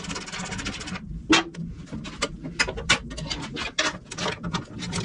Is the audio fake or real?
real